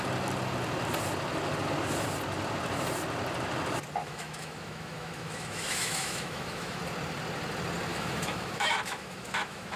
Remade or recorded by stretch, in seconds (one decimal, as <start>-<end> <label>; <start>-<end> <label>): 0.0-4.0 recorded; 4.0-6.8 remade; 6.8-7.9 recorded; 7.9-9.8 remade